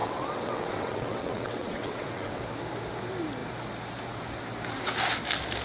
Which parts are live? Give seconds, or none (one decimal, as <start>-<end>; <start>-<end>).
2.4-5.6